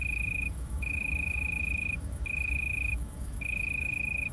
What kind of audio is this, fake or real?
fake